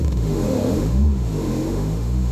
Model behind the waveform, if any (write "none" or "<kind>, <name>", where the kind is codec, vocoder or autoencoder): autoencoder, DAC-VAE